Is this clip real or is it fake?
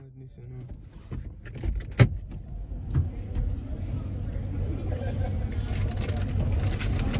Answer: real